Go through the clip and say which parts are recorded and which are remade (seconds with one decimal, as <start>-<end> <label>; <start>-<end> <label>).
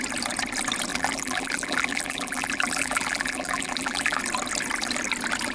0.0-0.9 recorded; 0.9-4.2 remade; 4.2-5.5 recorded